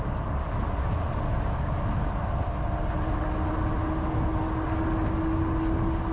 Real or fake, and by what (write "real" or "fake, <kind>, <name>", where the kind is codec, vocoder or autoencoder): real